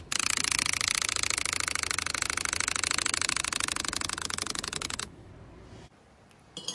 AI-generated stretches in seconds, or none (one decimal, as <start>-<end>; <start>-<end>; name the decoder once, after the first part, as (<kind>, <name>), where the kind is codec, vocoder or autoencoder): 4.2-5.3 (autoencoder, DAC-VAE)